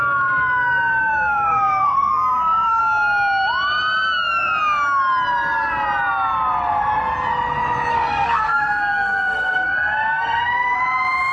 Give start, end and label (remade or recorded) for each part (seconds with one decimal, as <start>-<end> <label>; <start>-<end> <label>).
0.0-1.0 recorded; 1.0-2.8 remade; 2.8-7.9 recorded; 7.9-10.8 remade; 10.8-11.3 recorded